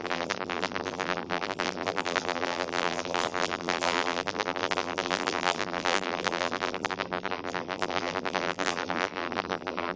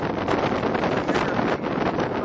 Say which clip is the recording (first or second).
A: second